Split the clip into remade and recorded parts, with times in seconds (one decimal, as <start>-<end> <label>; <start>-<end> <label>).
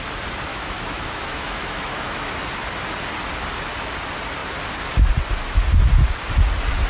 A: 0.0-0.5 recorded; 0.5-2.3 remade; 2.3-6.9 recorded